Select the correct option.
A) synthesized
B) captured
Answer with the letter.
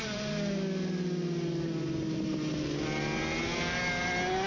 B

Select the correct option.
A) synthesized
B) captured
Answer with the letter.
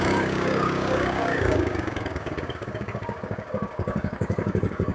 A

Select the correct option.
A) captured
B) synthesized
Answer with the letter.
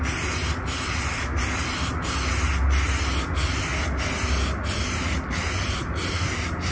A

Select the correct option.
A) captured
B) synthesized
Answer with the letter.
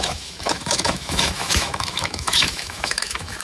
B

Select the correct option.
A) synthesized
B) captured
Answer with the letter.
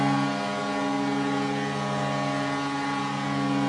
B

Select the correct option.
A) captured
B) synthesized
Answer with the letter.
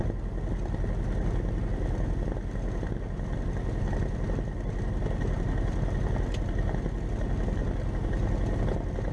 A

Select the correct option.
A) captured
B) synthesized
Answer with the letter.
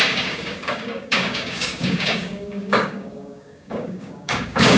B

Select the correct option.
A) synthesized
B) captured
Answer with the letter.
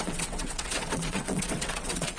A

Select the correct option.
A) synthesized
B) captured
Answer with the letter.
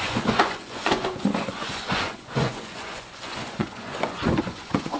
A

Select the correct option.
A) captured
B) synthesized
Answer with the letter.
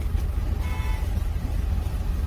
A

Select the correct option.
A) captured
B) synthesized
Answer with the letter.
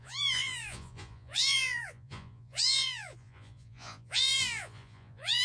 B